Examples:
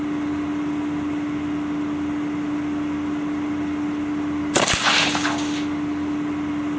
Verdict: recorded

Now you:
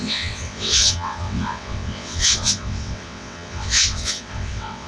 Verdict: remade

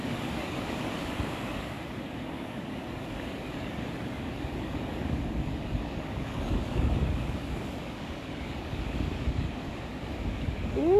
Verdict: remade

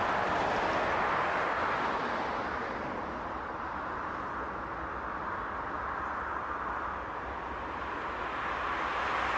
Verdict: recorded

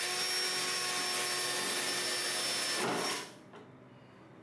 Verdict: recorded